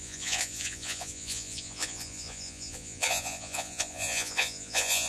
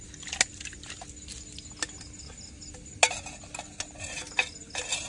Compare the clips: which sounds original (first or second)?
second